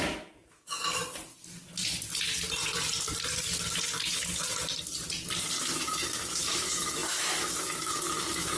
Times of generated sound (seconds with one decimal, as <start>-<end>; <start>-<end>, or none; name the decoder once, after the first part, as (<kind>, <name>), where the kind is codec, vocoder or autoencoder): 0.0-1.0 (autoencoder, DAC-VAE); 5.6-8.6